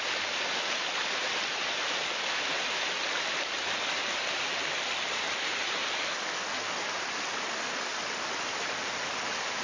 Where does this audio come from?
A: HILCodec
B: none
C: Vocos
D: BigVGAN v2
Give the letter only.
B